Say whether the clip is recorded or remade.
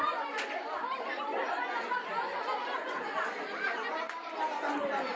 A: recorded